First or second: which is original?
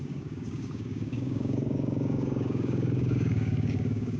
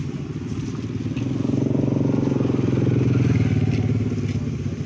second